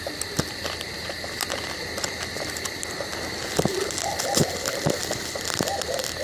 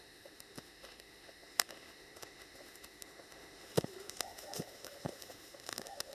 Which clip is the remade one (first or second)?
second